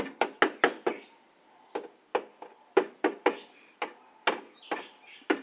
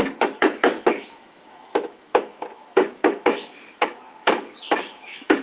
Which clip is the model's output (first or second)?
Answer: second